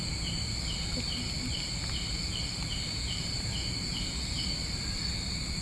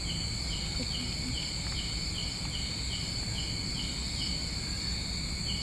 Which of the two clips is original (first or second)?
second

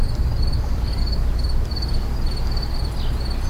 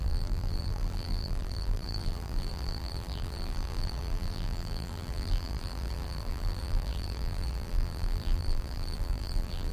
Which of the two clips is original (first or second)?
first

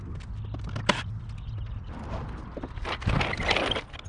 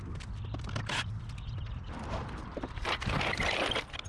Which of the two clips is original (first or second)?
first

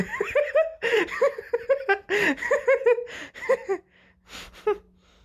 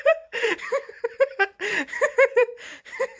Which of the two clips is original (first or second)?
first